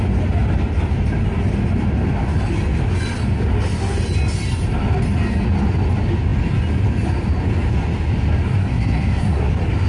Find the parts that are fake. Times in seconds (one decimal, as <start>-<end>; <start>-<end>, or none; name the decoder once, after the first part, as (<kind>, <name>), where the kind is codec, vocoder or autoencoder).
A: 8.6-9.5 (codec, SNAC)